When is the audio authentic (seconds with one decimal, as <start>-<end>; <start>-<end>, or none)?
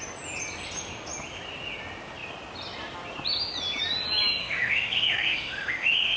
0.0-4.4